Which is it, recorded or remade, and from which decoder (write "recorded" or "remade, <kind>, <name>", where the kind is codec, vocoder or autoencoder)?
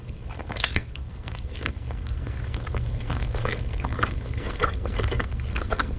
remade, codec, SNAC